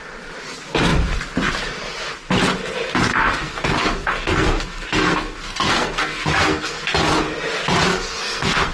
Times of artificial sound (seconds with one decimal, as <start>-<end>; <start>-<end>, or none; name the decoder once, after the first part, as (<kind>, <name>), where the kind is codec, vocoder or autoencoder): 3.1-6.8 (codec, SNAC); 7.9-8.7

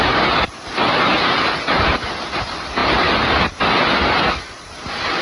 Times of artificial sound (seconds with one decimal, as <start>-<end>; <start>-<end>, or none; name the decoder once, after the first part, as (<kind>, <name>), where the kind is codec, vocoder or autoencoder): none

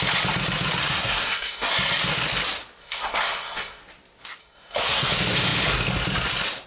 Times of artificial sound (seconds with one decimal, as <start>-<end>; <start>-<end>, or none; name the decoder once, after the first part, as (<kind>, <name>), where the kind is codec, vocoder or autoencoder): 0.8-1.7 (codec, SNAC); 2.8-3.8; 4.4-5.1

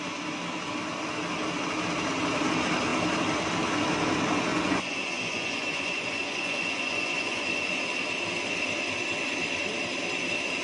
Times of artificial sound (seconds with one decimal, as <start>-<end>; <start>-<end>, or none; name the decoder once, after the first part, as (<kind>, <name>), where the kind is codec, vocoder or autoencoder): 4.5-7.8 (vocoder, Vocos)

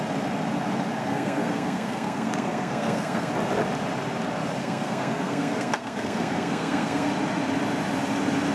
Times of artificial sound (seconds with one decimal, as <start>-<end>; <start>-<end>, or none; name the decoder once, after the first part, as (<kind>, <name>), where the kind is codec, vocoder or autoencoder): 1.0-3.3 (codec, SNAC); 4.6-7.1

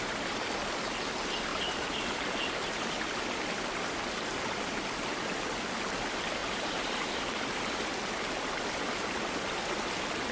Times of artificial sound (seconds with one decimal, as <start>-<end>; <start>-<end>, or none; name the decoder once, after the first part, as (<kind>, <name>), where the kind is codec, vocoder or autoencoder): 1.5-2.5 (vocoder, BigVGAN v2); 6.4-7.4